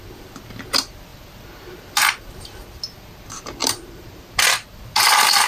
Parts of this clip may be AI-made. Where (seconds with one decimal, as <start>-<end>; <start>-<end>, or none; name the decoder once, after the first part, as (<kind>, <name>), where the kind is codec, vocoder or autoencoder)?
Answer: 1.1-2.6 (vocoder, BigVGAN v2); 3.6-4.9